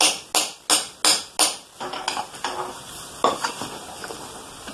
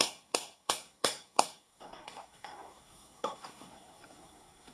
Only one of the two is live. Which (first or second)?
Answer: first